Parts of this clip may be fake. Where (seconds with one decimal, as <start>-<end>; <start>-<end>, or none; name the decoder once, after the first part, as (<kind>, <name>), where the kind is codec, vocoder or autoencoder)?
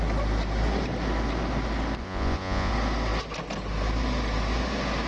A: 2.0-2.7 (vocoder, Vocos)